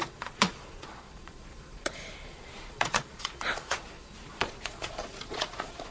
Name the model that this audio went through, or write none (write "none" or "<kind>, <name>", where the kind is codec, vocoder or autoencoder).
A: vocoder, Vocos